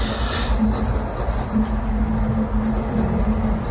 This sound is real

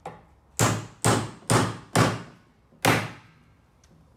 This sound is real